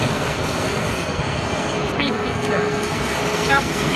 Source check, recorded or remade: remade